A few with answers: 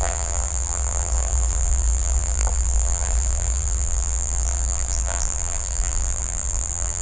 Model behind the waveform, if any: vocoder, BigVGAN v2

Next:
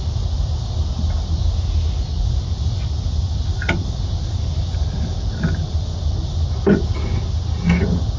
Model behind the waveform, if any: none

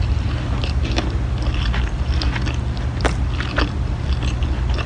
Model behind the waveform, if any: none